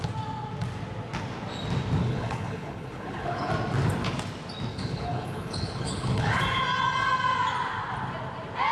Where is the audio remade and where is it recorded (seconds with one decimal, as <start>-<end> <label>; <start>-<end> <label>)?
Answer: 0.0-2.0 recorded; 2.0-3.5 remade; 3.5-4.7 recorded; 4.7-6.4 remade; 6.4-8.7 recorded